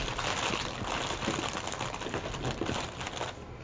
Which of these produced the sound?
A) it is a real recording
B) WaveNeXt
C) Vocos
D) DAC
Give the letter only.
A